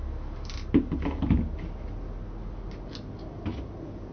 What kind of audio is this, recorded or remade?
recorded